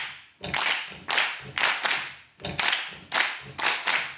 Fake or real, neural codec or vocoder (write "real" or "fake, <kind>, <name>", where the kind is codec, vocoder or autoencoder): real